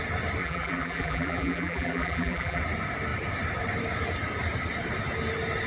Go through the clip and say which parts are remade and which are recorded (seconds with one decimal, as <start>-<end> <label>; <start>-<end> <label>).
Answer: 0.0-0.4 recorded; 0.4-2.6 remade; 2.6-5.7 recorded